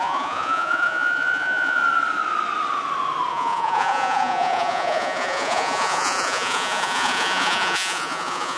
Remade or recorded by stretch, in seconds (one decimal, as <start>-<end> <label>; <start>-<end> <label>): 0.0-1.8 remade; 1.8-3.3 recorded; 3.3-8.6 remade